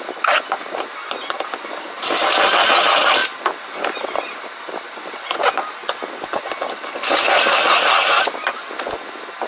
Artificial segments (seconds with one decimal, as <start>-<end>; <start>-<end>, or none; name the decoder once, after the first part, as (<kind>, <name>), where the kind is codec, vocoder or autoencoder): none